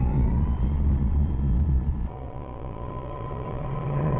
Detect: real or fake fake